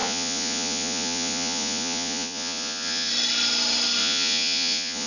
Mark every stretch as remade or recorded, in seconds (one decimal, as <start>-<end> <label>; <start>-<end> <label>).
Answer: 0.0-3.1 remade; 3.1-4.0 recorded; 4.0-5.1 remade